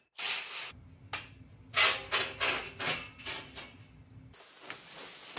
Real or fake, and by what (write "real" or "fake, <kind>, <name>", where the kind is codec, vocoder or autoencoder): real